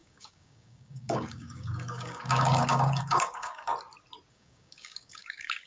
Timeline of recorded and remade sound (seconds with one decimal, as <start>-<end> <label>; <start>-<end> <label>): 0.0-3.7 remade; 3.7-4.3 recorded; 4.3-5.7 remade